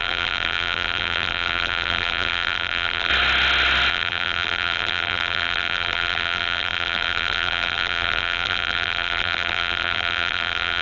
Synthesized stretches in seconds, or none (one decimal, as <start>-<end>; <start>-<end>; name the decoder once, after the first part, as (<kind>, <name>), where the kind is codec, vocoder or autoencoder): 0.0-3.1 (vocoder, BigVGAN v2); 3.9-10.8